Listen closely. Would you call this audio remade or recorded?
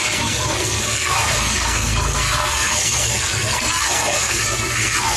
remade